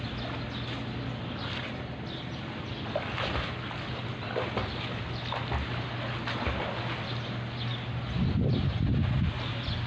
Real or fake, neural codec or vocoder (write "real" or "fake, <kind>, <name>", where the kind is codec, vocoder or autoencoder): real